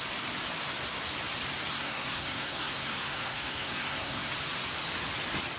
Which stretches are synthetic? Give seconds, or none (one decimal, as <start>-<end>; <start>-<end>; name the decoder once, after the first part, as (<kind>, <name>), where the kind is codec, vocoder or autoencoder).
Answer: 1.7-4.3 (codec, SNAC)